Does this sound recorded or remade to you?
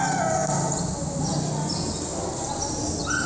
recorded